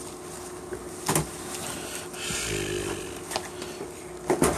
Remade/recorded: recorded